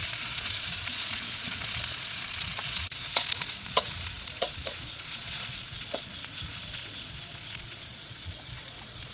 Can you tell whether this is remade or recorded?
remade